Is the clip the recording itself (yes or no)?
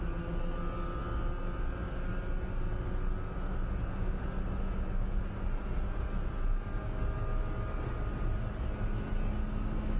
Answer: yes